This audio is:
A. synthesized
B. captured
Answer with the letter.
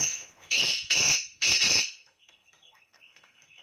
A